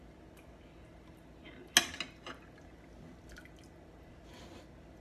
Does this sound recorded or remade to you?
recorded